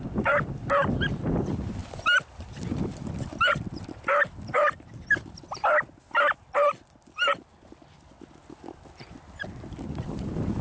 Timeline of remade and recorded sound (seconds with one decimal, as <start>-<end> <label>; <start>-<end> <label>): 0.0-10.6 recorded